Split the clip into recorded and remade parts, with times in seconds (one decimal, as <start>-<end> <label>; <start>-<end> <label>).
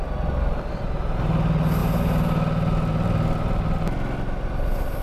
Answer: 0.0-5.0 recorded